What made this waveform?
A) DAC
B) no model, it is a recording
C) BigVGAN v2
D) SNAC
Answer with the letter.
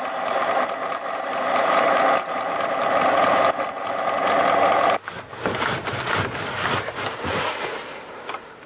C